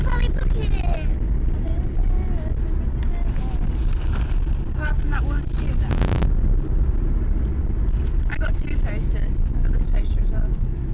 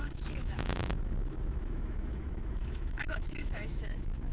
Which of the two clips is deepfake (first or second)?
second